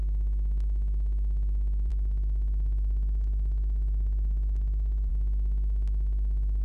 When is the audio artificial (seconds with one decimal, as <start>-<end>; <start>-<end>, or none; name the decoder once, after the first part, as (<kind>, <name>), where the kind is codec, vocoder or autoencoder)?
1.9-5.1 (autoencoder, DAC-VAE)